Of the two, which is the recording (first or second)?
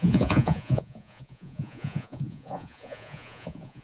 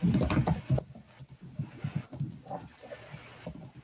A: second